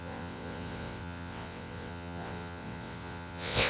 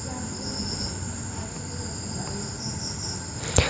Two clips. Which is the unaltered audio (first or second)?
second